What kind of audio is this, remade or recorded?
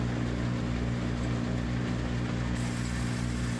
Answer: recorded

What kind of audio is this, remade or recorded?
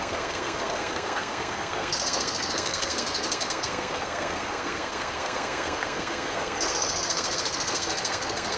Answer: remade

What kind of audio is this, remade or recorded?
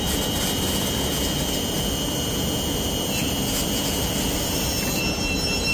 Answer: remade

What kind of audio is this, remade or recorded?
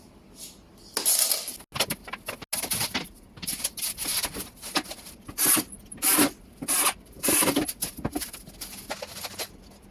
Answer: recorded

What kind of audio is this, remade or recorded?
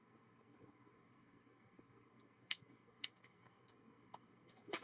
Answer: remade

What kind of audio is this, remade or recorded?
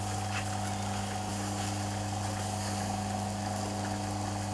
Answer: recorded